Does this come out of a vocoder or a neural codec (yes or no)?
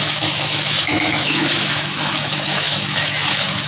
yes